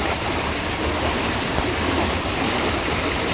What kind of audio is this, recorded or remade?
remade